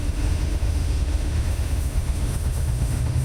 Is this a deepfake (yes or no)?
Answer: yes